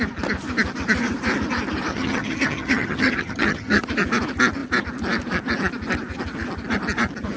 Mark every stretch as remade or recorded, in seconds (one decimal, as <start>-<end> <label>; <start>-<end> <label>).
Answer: 0.0-1.9 recorded; 1.9-3.8 remade; 3.8-7.4 recorded

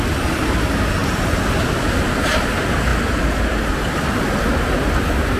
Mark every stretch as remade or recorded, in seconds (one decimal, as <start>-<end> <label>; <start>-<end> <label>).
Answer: 0.0-5.4 recorded